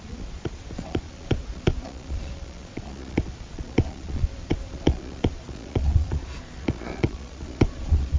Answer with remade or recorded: remade